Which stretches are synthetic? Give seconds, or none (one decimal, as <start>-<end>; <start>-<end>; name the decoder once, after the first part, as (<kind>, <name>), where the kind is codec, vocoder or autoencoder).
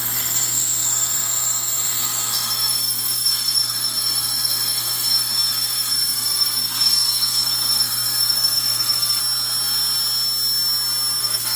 0.0-9.2 (codec, SNAC); 11.2-11.6